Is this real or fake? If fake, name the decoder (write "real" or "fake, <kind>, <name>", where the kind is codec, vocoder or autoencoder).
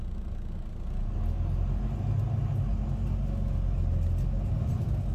real